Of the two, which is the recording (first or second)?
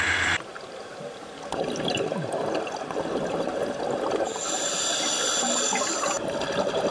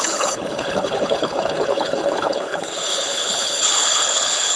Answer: first